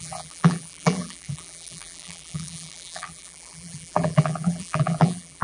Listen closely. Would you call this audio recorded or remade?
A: remade